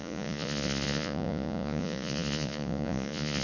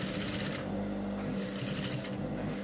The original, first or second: second